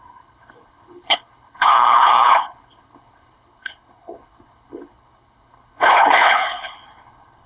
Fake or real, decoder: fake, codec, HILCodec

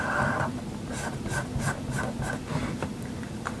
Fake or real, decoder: real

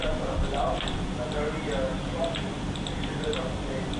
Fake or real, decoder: real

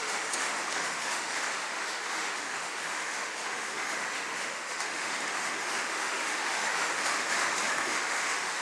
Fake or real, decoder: fake, autoencoder, DAC-VAE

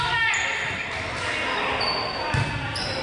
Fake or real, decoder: real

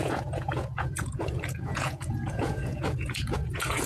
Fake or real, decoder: fake, vocoder, Vocos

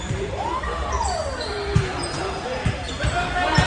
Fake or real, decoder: fake, vocoder, BigVGAN v2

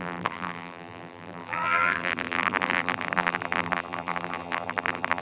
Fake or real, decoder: fake, vocoder, BigVGAN v2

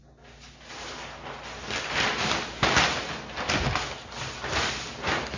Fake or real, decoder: real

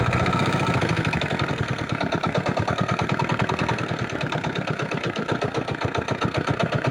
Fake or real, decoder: fake, codec, SNAC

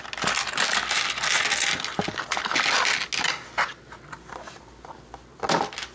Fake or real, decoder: real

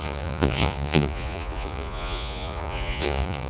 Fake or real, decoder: fake, vocoder, Vocos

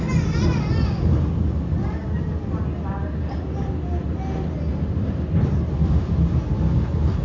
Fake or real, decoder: real